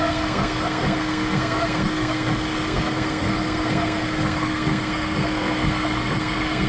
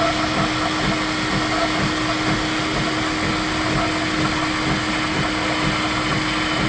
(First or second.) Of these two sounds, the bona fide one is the second